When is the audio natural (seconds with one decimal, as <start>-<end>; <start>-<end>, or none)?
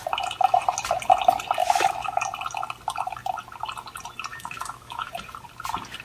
0.0-1.6; 2.2-4.3; 5.1-6.0